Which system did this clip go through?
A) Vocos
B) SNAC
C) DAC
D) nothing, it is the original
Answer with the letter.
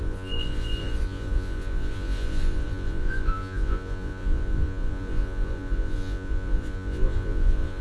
A